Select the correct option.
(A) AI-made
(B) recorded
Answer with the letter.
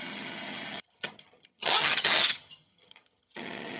A